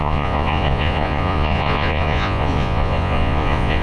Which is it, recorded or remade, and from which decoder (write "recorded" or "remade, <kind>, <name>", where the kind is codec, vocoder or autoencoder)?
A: remade, vocoder, Vocos